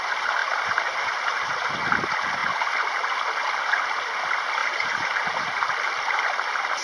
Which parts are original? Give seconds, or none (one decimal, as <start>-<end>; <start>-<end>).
0.0-0.4; 1.7-4.6; 5.1-6.8